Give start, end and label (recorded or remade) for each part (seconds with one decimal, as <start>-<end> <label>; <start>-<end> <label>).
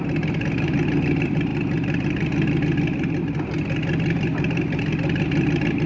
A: 0.0-5.9 recorded